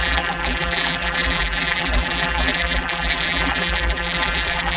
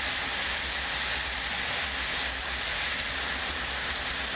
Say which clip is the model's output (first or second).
first